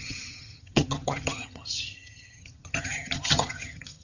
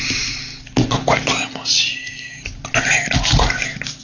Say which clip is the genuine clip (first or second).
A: second